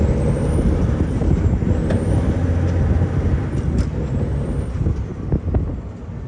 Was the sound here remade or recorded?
recorded